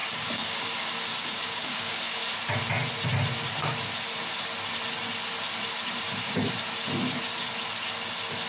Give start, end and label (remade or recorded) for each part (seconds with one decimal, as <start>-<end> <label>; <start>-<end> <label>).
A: 0.0-2.2 remade; 2.2-8.5 recorded